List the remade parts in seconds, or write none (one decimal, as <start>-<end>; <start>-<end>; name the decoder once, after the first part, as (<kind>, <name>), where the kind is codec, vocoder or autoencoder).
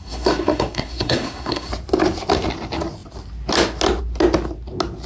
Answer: 0.0-1.7 (codec, SNAC)